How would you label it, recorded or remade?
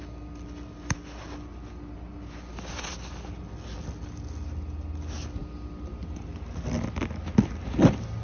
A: recorded